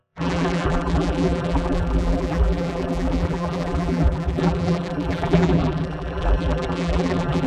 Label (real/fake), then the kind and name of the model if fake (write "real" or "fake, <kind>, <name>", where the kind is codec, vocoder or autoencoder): fake, vocoder, BigVGAN v2